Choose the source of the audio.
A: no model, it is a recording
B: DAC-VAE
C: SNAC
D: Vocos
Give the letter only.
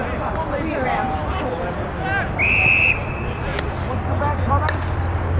A